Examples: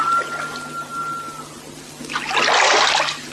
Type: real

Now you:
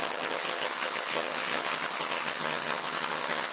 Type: fake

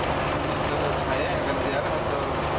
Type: real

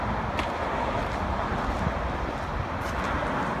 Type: real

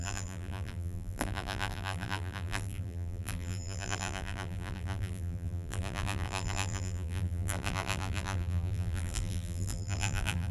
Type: fake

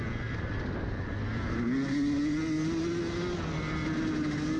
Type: real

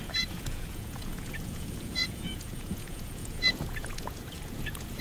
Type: fake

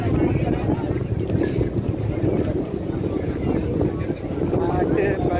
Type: real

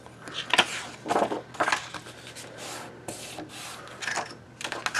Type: real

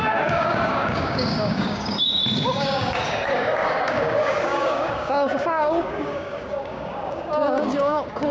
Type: fake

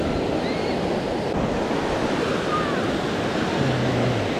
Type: real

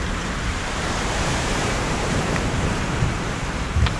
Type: fake